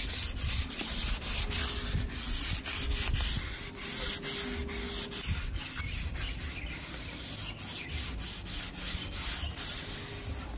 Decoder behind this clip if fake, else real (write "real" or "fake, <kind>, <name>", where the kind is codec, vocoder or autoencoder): real